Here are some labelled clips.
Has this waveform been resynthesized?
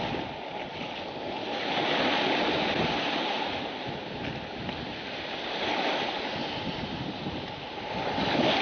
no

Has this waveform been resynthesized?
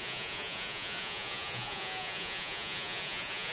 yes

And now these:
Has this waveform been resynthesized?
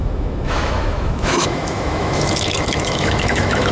yes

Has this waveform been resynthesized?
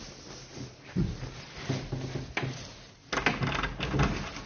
no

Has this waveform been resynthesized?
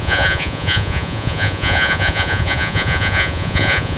yes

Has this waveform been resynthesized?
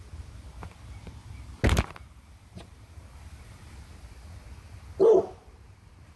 no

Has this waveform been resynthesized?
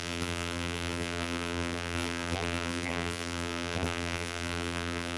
yes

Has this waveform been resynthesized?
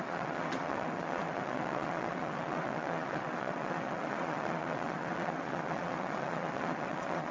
yes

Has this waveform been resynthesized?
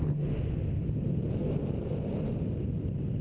no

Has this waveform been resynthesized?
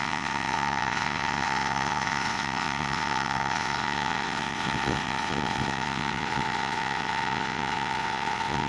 yes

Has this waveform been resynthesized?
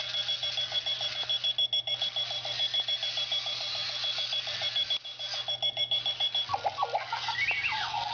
no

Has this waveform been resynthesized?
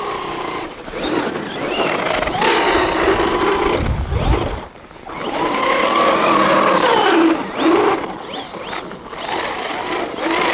no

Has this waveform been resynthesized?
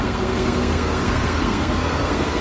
yes